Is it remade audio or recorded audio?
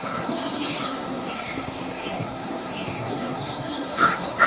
remade